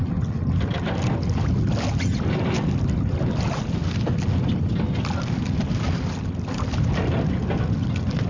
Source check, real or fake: real